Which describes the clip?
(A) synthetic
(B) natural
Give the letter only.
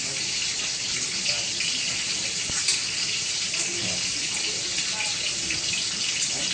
B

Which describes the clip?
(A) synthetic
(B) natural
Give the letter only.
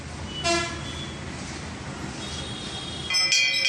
B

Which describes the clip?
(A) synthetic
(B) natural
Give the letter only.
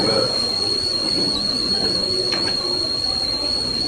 A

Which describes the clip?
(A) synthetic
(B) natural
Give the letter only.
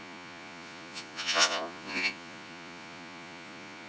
A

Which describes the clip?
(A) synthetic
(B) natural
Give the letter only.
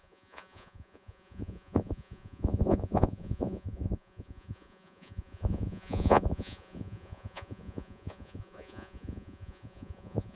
A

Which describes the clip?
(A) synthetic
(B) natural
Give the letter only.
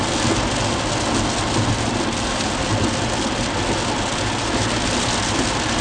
B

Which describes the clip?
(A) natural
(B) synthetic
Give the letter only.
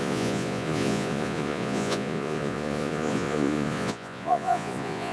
B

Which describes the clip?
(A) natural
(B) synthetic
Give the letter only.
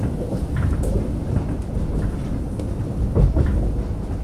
A